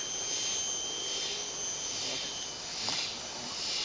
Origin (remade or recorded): recorded